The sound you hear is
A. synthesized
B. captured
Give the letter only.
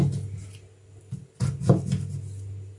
B